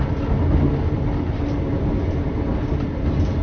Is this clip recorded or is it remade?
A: recorded